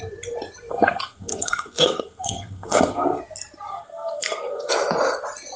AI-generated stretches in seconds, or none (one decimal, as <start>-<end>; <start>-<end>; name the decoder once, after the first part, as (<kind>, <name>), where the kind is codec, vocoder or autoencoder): 0.7-3.2 (codec, SNAC); 3.7-4.7